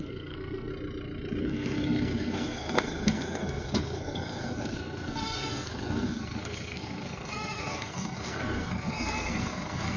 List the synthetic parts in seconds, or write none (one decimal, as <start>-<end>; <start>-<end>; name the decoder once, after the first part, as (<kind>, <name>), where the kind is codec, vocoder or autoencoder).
0.0-0.7 (codec, SNAC); 1.4-10.0